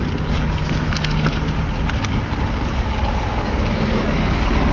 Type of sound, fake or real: fake